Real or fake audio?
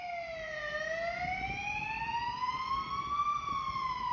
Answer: real